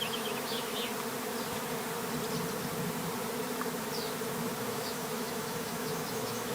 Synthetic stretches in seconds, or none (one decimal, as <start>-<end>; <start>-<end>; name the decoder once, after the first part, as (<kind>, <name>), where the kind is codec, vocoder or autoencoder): 0.0-0.7 (autoencoder, DAC-VAE); 4.6-6.5